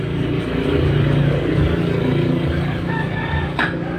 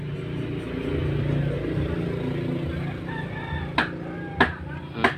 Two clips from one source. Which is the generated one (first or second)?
first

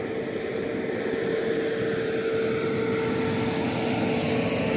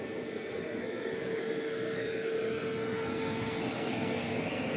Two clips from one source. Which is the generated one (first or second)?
second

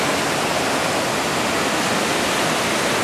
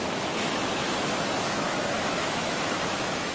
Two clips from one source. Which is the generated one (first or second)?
second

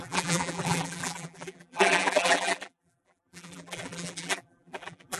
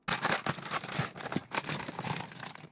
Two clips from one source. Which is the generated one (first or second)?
first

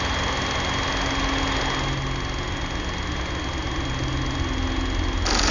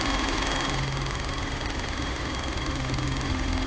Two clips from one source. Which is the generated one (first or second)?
second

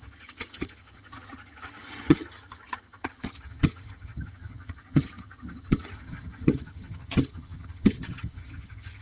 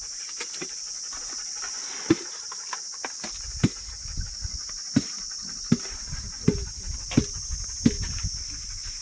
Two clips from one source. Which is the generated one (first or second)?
first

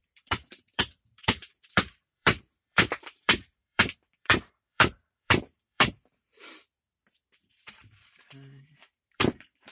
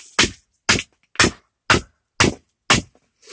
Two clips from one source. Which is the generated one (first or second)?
first